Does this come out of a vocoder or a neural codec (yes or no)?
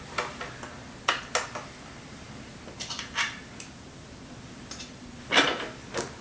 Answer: no